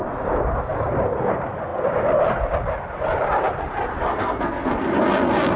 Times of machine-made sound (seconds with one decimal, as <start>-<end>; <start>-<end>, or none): 4.0-4.7